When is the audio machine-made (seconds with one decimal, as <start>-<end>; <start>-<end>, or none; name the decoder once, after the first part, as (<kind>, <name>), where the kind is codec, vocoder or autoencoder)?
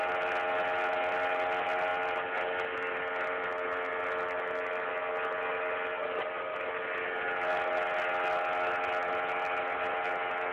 none